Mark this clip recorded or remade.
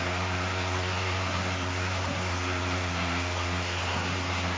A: remade